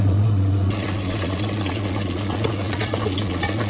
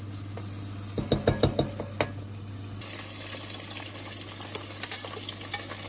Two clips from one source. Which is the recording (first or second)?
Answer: second